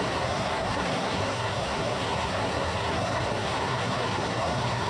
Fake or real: fake